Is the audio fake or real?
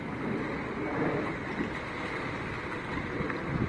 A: real